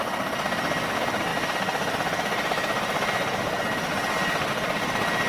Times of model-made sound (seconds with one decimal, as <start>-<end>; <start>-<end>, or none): none